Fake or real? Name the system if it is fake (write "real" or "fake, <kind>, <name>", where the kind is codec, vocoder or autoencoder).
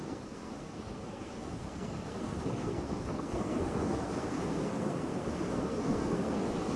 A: fake, codec, SNAC